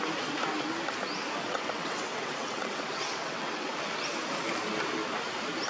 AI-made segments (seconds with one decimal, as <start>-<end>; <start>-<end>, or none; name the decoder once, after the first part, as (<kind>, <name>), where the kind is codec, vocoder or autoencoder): 1.4-3.7 (vocoder, WaveNeXt)